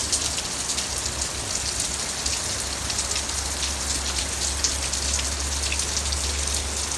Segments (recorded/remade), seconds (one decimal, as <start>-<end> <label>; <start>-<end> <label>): 0.0-7.0 recorded